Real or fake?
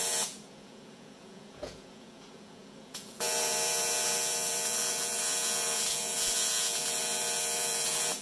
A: fake